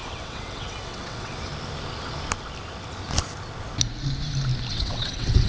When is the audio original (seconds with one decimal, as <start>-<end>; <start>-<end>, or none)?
1.5-4.7